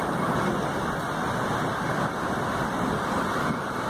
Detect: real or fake real